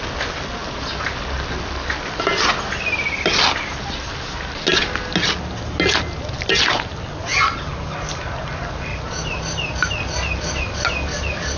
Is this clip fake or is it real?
real